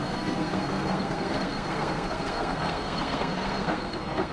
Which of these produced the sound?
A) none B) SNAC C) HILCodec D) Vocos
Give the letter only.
B